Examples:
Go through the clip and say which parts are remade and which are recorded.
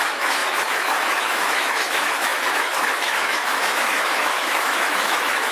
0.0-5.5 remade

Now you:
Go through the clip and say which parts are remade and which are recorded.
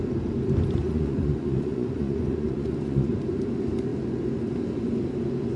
0.0-0.8 recorded; 0.8-3.1 remade; 3.1-5.6 recorded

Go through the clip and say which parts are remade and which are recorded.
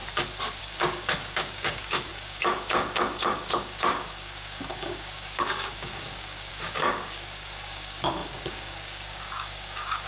0.0-0.6 recorded; 0.6-10.1 remade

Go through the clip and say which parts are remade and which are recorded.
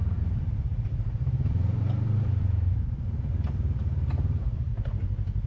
0.0-4.7 remade; 4.7-5.5 recorded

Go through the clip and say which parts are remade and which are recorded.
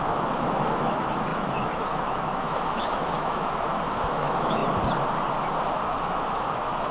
0.0-4.6 remade; 4.6-5.6 recorded; 5.6-6.9 remade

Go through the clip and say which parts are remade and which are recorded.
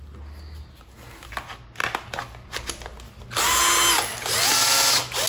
0.0-5.3 recorded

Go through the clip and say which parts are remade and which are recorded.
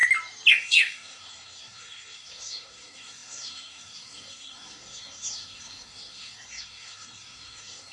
0.0-0.5 recorded; 0.5-7.9 remade